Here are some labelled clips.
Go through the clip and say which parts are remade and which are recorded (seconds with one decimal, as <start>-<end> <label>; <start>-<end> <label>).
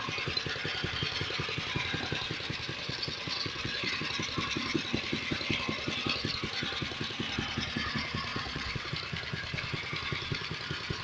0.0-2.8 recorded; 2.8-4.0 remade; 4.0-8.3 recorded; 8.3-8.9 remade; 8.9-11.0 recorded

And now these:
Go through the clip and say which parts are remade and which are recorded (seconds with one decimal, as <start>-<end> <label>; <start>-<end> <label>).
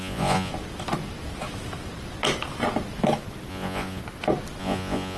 0.0-0.5 remade; 0.5-3.5 recorded; 3.5-4.0 remade; 4.0-4.6 recorded; 4.6-5.2 remade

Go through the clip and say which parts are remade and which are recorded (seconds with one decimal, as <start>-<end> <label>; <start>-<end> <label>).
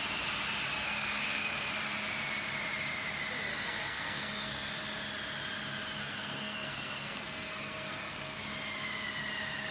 0.0-0.8 recorded; 0.8-1.7 remade; 1.7-3.5 recorded; 3.5-4.7 remade; 4.7-6.0 recorded; 6.0-8.4 remade; 8.4-9.7 recorded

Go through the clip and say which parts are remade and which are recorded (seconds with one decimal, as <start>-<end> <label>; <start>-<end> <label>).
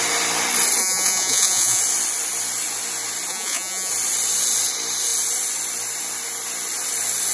0.0-0.8 recorded; 0.8-1.8 remade; 1.8-3.3 recorded; 3.3-3.9 remade; 3.9-7.3 recorded